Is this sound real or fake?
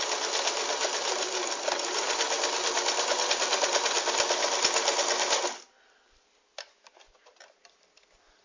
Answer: fake